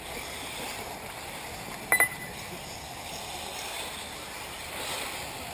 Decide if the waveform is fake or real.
real